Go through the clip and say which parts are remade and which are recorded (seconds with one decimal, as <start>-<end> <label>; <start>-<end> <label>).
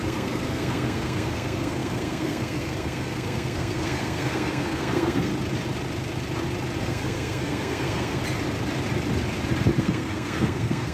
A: 0.0-5.3 remade; 5.3-6.8 recorded; 6.8-8.2 remade; 8.2-9.8 recorded; 9.8-10.9 remade